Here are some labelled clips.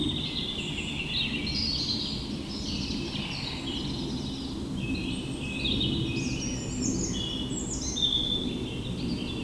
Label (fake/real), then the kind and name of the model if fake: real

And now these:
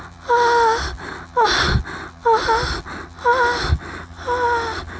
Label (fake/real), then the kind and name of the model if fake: real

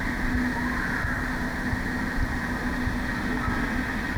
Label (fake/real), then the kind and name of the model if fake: real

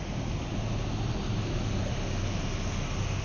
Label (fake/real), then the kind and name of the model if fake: real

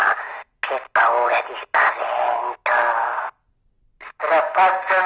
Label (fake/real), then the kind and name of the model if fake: real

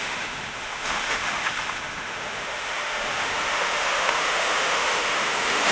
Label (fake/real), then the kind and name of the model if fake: fake, autoencoder, DAC-VAE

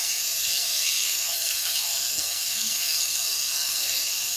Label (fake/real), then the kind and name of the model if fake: fake, codec, SNAC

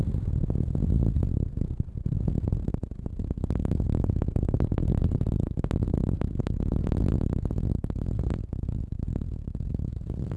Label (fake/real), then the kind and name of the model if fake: fake, vocoder, BigVGAN v2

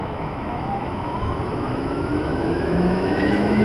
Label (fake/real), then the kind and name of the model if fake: fake, autoencoder, DAC-VAE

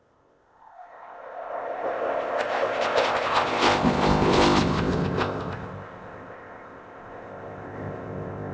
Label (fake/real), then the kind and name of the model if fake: fake, codec, ZipCodec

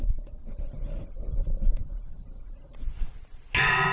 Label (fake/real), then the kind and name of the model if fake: fake, vocoder, BigVGAN v2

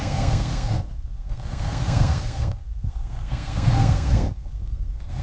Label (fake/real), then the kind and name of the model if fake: fake, codec, SNAC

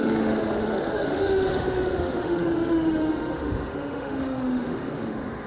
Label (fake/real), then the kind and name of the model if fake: fake, autoencoder, DAC-VAE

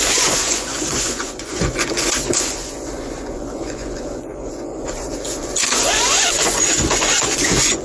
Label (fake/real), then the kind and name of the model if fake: fake, vocoder, Vocos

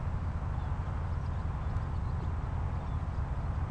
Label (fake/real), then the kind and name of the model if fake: real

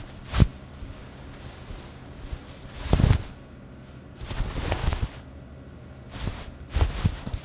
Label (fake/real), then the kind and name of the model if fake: real